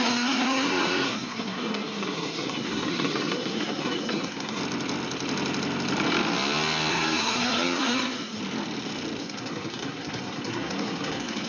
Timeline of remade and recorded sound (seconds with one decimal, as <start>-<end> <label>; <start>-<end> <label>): 0.0-4.6 remade; 4.6-6.9 recorded; 6.9-8.4 remade; 8.4-9.2 recorded; 9.2-11.5 remade